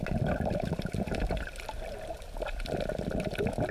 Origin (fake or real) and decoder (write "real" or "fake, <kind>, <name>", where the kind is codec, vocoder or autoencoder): real